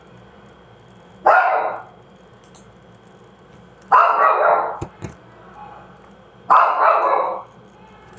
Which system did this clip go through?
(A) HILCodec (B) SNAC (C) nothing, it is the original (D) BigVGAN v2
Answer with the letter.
C